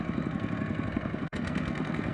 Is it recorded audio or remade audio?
remade